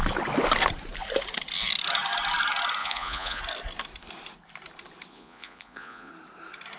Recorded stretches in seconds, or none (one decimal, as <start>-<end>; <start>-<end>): 0.0-2.8; 3.4-5.1; 6.1-6.8

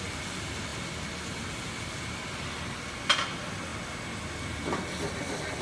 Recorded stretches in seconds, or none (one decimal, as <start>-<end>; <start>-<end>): 0.0-5.6

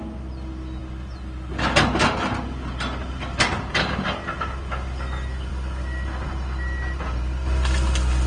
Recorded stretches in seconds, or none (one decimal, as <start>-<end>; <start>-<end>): 0.0-8.3

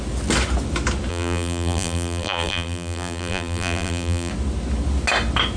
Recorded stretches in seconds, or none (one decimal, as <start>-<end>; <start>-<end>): 0.0-1.1; 4.3-5.6

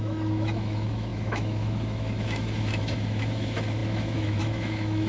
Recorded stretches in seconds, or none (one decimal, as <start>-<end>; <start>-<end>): none

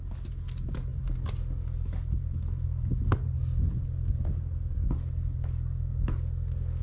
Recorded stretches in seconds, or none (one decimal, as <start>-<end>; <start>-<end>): 0.0-6.8

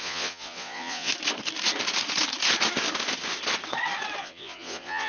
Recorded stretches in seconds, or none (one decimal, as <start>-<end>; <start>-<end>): 1.1-4.2